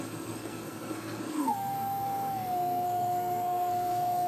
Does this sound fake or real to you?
fake